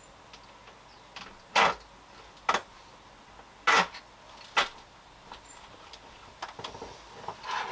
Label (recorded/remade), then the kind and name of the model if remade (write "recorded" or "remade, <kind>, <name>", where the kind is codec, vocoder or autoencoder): recorded